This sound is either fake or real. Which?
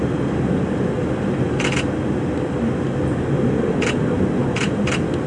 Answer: real